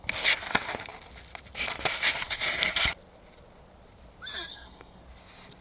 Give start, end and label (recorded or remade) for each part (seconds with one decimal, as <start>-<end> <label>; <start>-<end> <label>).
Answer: 0.0-4.5 recorded; 4.5-5.0 remade; 5.0-5.6 recorded